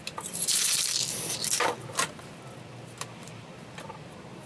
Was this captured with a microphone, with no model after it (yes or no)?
no